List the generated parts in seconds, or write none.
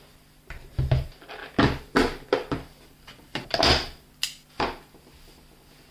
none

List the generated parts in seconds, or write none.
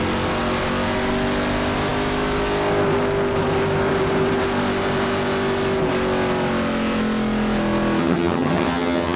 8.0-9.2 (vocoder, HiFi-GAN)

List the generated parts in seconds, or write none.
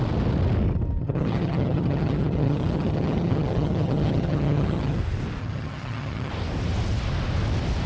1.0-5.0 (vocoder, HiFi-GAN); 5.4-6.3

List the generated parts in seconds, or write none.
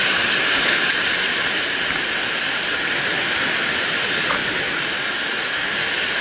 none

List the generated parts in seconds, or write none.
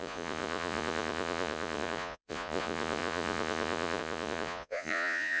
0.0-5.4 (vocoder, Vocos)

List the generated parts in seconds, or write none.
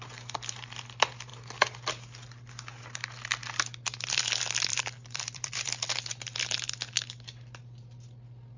4.7-5.7 (vocoder, BigVGAN v2)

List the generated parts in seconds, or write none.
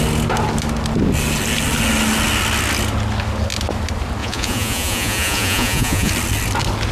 4.2-6.1 (vocoder, Vocos)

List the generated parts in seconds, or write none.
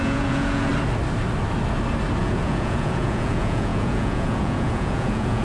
0.0-0.7 (vocoder, Vocos); 2.2-5.4